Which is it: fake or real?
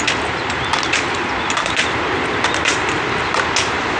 real